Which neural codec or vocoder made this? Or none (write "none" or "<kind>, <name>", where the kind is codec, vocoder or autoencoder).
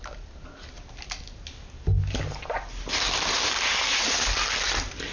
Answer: none